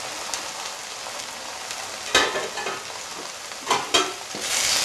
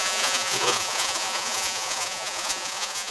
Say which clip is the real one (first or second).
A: first